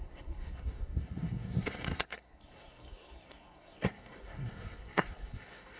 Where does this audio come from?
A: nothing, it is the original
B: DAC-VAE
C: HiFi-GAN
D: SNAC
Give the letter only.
D